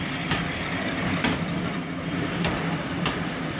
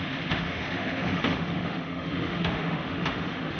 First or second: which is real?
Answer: first